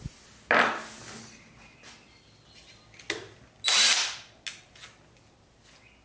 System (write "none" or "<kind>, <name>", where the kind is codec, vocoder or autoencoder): none